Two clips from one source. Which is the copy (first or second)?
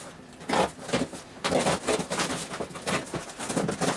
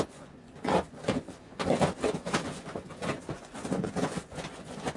second